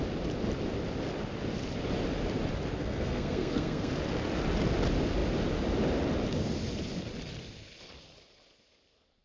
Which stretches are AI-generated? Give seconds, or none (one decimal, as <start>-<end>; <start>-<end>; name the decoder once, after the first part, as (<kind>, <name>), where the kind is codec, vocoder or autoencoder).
2.8-3.9 (codec, SNAC)